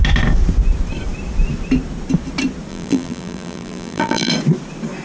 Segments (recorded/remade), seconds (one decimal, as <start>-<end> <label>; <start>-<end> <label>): 0.0-2.7 recorded; 2.7-4.3 remade; 4.3-5.0 recorded